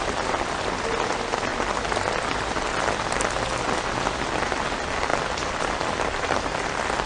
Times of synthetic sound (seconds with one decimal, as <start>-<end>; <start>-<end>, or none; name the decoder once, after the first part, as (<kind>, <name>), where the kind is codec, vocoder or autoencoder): none